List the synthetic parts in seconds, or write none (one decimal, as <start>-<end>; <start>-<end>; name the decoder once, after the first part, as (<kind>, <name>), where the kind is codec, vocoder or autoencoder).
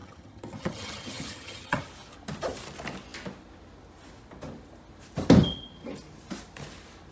0.0-1.8 (vocoder, HiFi-GAN)